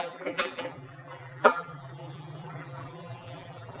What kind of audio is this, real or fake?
fake